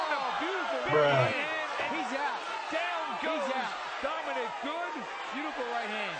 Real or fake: real